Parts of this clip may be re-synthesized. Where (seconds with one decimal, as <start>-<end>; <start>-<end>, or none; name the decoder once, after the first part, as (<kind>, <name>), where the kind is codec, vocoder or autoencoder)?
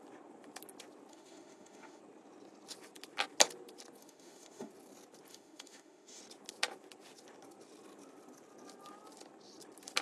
1.1-2.0 (autoencoder, DAC-VAE); 4.0-4.7; 5.3-6.2